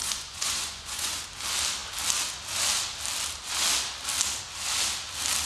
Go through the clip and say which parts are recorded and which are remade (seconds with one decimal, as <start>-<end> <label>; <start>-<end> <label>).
0.0-1.2 remade; 1.2-5.5 recorded